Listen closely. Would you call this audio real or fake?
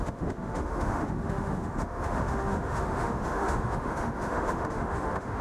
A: fake